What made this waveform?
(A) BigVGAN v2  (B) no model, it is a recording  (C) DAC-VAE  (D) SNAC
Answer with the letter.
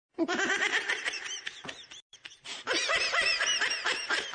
A